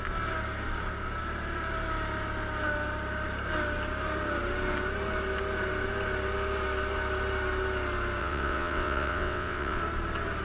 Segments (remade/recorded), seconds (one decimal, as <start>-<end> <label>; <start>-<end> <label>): 0.0-8.2 recorded; 8.2-9.8 remade; 9.8-10.4 recorded